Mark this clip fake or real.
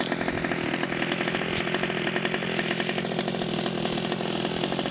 real